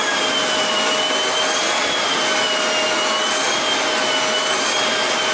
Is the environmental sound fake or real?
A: real